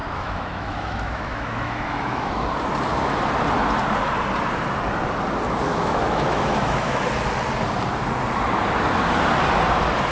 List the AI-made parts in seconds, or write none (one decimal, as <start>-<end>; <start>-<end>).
0.0-2.3; 5.7-7.0